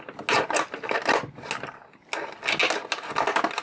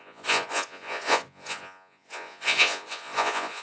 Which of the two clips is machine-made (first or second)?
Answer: second